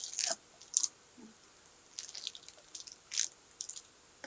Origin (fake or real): real